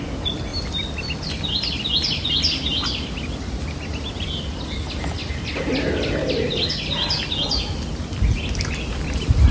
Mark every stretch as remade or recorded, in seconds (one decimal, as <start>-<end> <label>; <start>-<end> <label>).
0.0-9.5 recorded